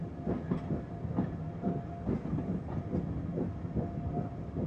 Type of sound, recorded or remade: recorded